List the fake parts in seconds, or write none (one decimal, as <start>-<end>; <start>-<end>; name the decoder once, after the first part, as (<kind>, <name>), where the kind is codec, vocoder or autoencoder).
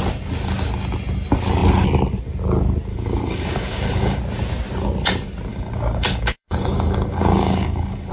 2.9-4.2 (codec, DAC); 5.5-8.1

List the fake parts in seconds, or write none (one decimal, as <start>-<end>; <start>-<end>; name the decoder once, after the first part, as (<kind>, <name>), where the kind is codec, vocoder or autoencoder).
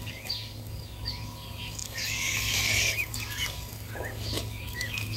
0.0-5.2 (codec, DAC)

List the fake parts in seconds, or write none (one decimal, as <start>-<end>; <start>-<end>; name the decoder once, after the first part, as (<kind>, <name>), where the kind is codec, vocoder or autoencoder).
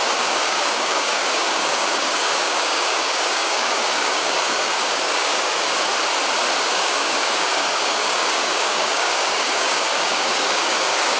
0.0-5.9 (codec, DAC); 6.6-11.2